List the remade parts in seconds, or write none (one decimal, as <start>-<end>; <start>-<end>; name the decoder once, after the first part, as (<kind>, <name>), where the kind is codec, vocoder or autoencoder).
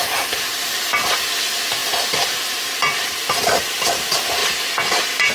none